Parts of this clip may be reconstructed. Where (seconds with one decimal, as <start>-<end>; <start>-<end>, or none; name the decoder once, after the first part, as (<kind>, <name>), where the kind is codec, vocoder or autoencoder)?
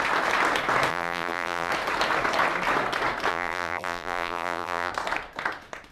0.9-1.7 (vocoder, BigVGAN v2); 3.3-4.9